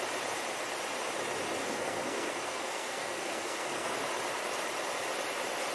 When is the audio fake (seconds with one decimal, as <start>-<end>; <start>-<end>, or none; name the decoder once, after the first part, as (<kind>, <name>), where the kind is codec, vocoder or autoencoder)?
1.6-3.9 (codec, SNAC)